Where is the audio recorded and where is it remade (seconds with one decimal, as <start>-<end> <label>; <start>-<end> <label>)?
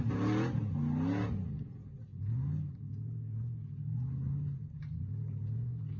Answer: 0.0-6.0 recorded